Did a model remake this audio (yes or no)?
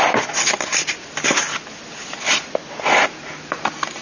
no